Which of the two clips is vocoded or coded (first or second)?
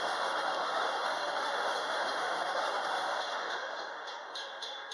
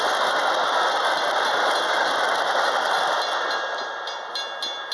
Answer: first